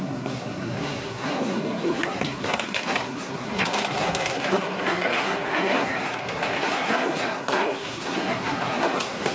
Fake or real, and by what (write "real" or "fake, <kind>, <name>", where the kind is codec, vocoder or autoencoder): fake, codec, SNAC